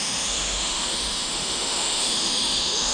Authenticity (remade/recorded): remade